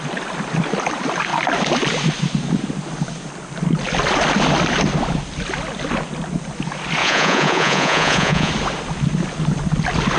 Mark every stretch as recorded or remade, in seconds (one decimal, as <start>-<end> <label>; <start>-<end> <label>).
0.0-7.0 recorded; 7.0-8.5 remade; 8.5-10.2 recorded